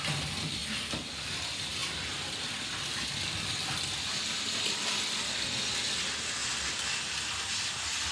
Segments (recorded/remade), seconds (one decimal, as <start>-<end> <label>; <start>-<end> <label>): 0.0-8.1 recorded